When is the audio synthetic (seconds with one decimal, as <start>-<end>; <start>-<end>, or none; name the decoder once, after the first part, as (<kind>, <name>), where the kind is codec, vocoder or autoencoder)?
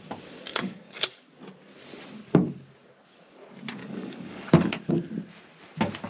0.5-1.1 (codec, DAC); 3.8-4.9